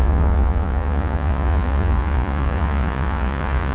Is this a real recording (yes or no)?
no